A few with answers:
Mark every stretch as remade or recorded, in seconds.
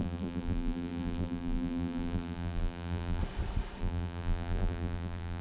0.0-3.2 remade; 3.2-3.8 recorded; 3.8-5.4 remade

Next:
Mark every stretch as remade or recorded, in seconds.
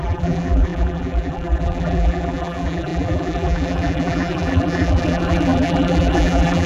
0.0-6.7 remade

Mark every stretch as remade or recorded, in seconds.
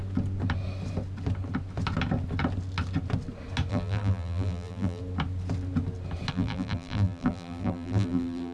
0.0-3.7 recorded; 3.7-5.0 remade; 5.0-6.3 recorded; 6.3-8.5 remade